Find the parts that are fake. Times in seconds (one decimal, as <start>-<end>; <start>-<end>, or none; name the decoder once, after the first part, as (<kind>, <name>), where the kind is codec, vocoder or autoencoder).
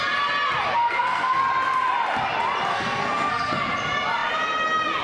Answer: 0.7-1.4 (codec, SNAC); 2.7-3.5